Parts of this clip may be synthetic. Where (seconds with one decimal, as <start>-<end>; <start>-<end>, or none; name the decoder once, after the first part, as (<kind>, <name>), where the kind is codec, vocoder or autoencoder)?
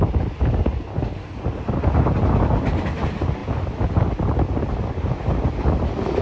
0.9-1.6 (codec, DAC)